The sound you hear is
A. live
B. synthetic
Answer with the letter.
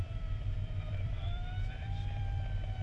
B